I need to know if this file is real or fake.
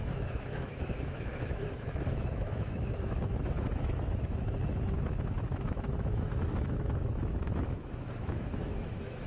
fake